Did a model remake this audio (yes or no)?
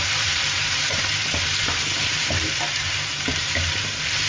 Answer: yes